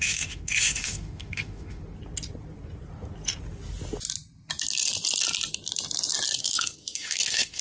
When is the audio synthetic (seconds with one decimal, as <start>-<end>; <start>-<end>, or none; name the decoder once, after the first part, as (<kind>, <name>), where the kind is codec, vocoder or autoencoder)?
0.0-1.8 (autoencoder, DAC-VAE); 6.4-7.6